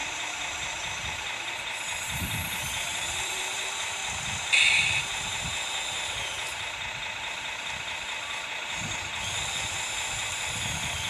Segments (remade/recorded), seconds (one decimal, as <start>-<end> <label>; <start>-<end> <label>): 0.0-4.0 remade; 4.0-8.5 recorded; 8.5-9.1 remade; 9.1-9.7 recorded; 9.7-11.1 remade